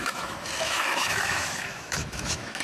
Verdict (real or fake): fake